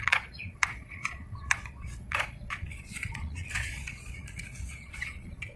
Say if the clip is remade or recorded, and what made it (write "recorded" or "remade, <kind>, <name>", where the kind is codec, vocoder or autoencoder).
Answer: remade, vocoder, Vocos